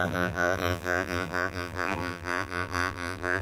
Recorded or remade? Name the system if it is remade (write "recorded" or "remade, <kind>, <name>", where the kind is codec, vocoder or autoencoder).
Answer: remade, vocoder, BigVGAN v2